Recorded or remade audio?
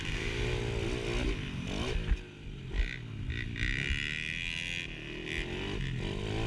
recorded